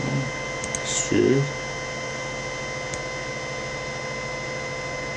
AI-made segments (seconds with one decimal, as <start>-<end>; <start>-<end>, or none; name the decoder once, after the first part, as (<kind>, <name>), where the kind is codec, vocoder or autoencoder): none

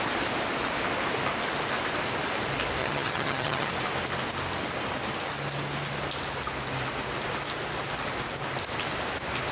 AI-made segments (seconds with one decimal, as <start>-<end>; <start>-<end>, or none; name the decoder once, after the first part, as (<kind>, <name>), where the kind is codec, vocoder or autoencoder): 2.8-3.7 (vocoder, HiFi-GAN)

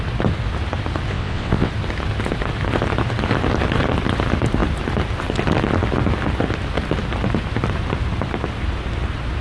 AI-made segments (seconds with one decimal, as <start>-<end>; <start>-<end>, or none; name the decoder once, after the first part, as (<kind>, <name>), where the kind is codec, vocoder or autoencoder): 1.1-1.7 (vocoder, WaveNeXt)